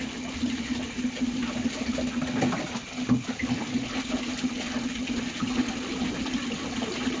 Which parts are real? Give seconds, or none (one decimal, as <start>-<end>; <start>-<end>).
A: 0.0-7.2